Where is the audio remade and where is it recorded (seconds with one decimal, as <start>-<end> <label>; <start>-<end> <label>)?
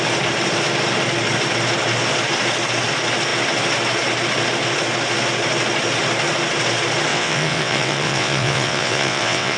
0.0-7.1 recorded; 7.1-9.6 remade